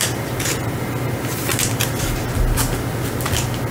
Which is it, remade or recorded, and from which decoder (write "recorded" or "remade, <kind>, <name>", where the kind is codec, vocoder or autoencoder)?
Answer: recorded